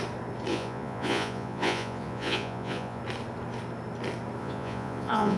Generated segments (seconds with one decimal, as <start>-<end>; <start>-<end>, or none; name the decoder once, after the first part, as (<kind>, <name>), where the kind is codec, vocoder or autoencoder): 0.5-3.0 (vocoder, Vocos); 4.4-5.4